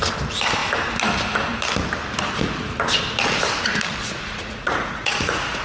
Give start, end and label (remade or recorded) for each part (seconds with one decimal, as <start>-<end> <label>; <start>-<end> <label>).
0.0-4.0 recorded; 4.0-5.6 remade